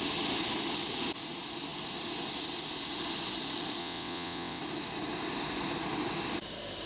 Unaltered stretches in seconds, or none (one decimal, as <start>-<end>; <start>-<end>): 0.0-3.8; 4.6-6.9